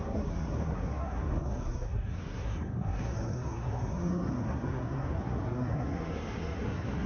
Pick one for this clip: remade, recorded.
remade